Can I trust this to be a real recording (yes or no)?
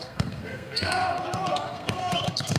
no